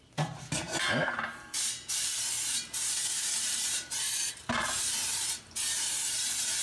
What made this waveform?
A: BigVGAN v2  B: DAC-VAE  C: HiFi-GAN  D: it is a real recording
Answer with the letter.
A